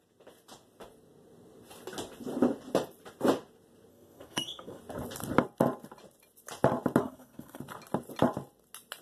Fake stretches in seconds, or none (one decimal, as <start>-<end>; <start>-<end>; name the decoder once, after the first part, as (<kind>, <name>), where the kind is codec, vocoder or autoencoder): 3.9-4.8 (codec, SNAC); 7.0-7.6